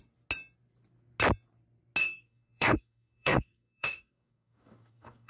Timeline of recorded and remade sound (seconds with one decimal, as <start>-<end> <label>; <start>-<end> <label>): 0.0-2.0 recorded; 2.0-5.3 remade